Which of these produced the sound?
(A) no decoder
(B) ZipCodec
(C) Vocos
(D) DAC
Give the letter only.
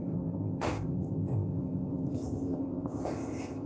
B